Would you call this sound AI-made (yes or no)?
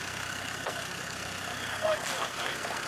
yes